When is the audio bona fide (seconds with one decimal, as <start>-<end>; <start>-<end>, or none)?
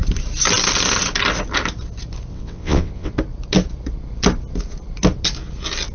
0.0-2.3; 3.1-5.9